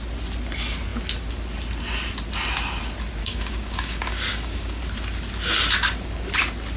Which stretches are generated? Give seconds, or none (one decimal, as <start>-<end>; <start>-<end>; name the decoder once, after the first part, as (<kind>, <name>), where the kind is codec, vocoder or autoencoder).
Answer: 3.2-4.8 (codec, DAC)